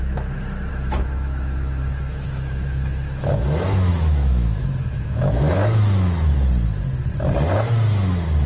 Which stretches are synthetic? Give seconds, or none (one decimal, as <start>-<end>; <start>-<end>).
0.7-3.3; 3.9-6.3

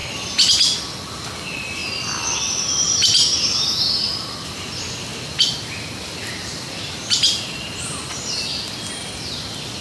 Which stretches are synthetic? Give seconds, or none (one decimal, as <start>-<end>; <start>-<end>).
0.8-1.8; 3.9-5.1; 6.0-9.8

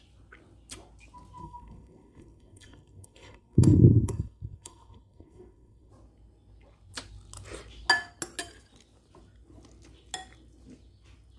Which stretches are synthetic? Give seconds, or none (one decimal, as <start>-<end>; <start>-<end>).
1.4-5.9

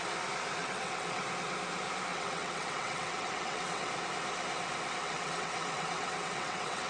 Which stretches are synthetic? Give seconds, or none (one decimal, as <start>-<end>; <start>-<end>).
0.6-1.2; 2.1-3.9; 5.0-6.9